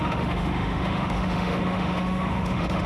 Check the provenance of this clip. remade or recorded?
remade